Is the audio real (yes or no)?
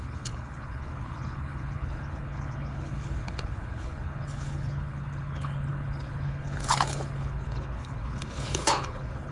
no